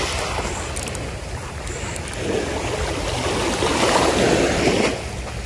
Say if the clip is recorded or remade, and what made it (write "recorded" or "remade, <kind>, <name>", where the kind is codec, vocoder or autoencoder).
recorded